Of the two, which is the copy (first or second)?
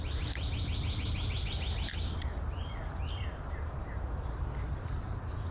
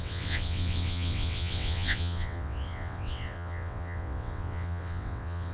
second